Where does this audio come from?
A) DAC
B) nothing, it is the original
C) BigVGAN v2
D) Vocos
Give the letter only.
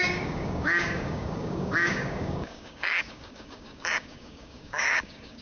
A